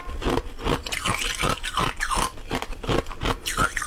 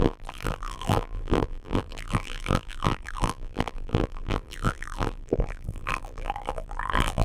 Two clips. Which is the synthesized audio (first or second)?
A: second